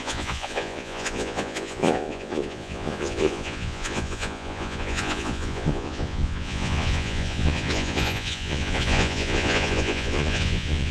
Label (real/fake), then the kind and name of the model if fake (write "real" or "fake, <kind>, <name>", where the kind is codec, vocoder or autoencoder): fake, vocoder, Vocos